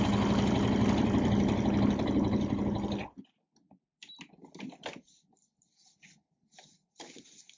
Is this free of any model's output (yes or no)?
yes